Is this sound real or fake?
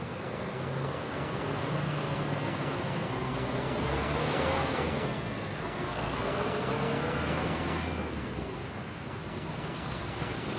fake